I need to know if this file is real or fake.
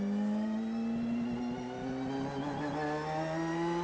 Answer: real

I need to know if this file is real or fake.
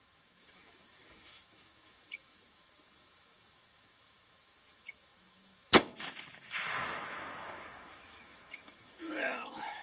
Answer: fake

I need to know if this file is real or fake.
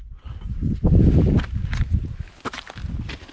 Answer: real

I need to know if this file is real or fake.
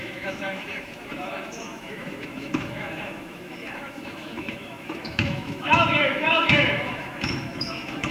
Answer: fake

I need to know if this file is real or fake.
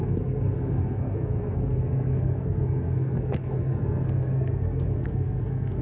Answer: fake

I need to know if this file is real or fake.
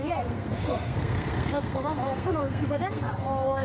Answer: fake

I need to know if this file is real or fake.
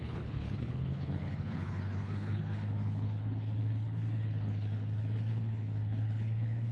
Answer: fake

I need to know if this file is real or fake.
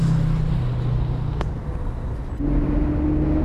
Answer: real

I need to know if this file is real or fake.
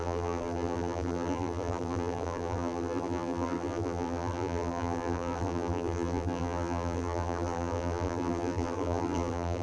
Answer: fake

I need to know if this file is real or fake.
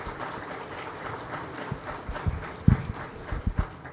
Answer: real